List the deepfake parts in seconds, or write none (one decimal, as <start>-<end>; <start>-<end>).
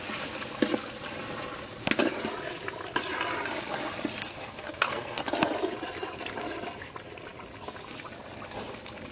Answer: 4.2-5.2